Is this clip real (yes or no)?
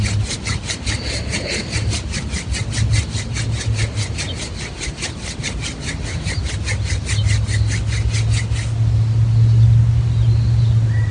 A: yes